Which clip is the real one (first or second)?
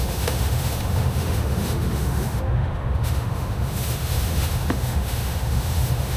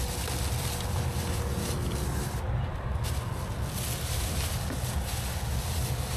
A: second